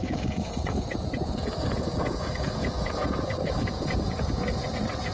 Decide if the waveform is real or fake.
fake